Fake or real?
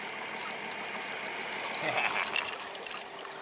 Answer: fake